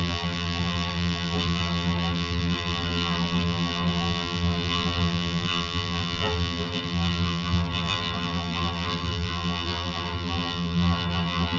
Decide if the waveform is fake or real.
fake